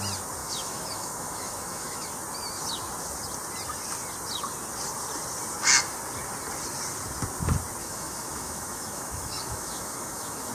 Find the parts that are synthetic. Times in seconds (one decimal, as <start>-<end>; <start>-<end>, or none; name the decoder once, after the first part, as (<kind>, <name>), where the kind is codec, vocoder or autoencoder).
0.4-2.1 (autoencoder, DAC-VAE); 7.8-10.5